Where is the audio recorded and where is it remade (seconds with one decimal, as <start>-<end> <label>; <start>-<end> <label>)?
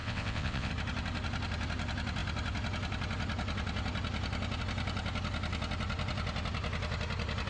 0.0-0.7 remade; 0.7-7.5 recorded